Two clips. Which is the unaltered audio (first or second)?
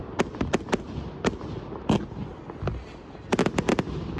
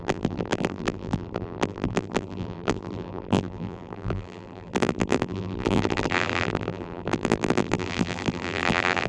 first